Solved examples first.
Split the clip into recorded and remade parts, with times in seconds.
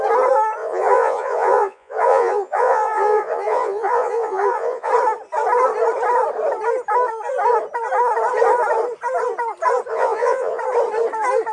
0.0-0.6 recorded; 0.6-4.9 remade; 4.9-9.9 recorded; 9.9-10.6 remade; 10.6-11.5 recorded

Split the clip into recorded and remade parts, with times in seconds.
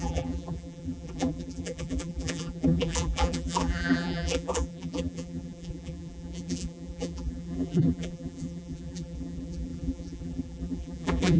0.0-11.4 remade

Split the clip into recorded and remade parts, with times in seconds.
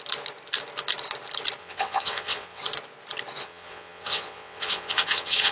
0.0-1.6 recorded; 1.6-2.6 remade; 2.6-3.4 recorded; 3.4-5.5 remade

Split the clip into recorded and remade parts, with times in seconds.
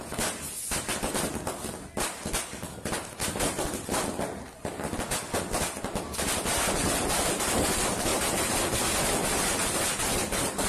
0.0-10.7 recorded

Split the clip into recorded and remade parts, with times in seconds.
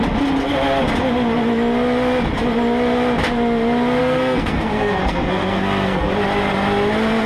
0.0-4.0 recorded; 4.0-6.1 remade; 6.1-7.3 recorded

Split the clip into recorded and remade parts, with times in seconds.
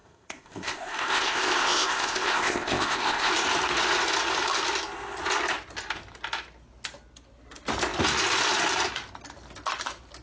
0.0-3.3 remade; 3.3-10.2 recorded